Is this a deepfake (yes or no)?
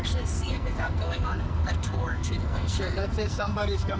yes